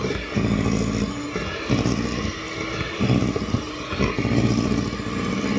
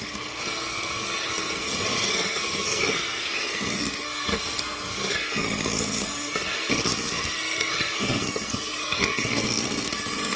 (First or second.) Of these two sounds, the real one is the first